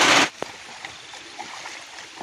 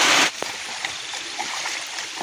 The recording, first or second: first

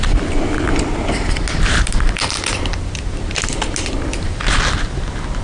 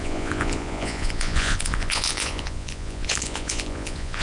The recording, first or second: first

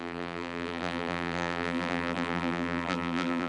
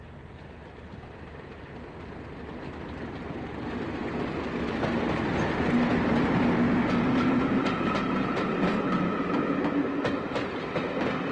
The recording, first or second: second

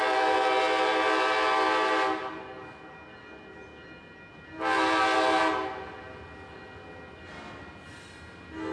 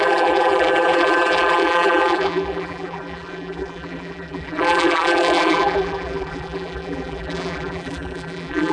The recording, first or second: first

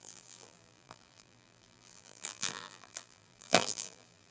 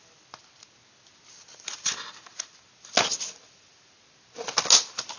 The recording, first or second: second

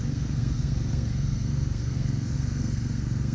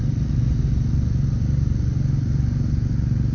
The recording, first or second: second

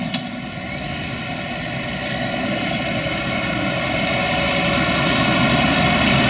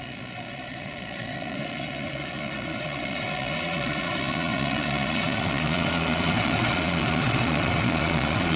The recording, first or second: first